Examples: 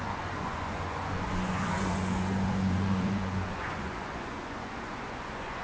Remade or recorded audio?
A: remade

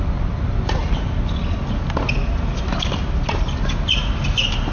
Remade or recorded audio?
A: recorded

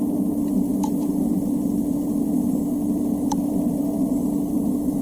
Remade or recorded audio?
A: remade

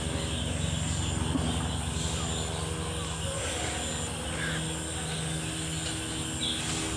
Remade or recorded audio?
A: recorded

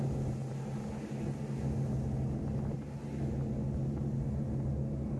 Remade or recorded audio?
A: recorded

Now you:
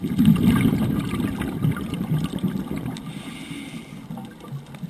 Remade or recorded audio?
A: recorded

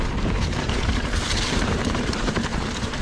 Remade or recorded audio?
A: remade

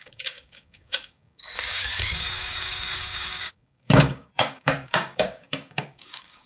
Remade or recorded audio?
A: remade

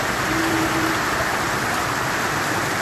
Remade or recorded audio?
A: remade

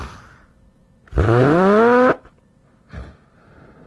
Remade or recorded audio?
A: recorded